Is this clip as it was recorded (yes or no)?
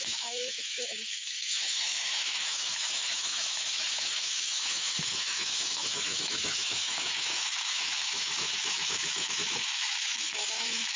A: no